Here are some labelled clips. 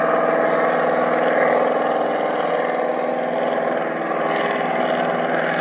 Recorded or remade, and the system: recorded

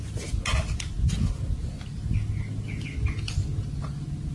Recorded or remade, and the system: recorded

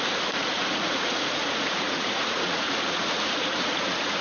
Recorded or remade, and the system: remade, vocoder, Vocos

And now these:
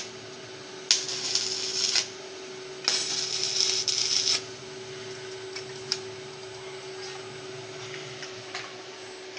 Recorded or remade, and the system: recorded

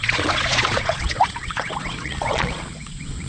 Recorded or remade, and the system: remade, vocoder, Vocos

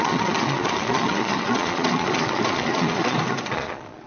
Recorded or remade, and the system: remade, vocoder, Vocos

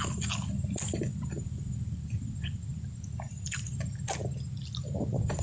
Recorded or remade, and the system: recorded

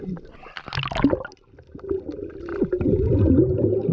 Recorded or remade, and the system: recorded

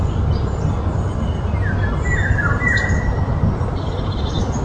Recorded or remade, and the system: recorded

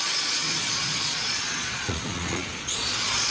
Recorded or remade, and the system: remade, vocoder, Vocos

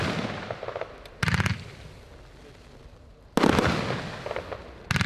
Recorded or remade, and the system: recorded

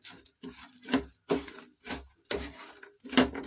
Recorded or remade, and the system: recorded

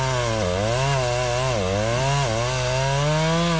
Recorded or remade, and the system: recorded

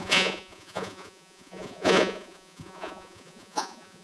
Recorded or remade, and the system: remade, vocoder, Vocos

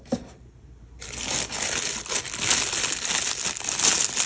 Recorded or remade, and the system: recorded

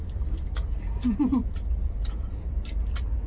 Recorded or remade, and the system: recorded